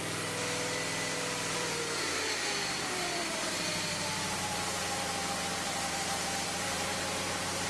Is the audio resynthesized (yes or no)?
yes